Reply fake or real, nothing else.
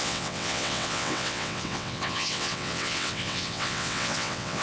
fake